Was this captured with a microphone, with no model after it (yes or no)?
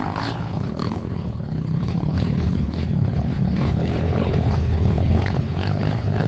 no